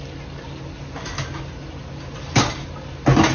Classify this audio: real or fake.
real